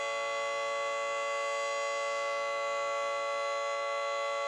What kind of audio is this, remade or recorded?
recorded